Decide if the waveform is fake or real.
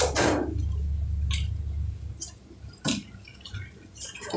real